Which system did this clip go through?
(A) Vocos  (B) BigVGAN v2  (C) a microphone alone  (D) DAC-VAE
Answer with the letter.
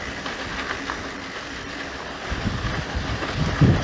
C